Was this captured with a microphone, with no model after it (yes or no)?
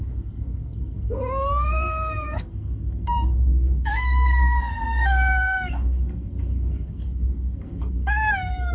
no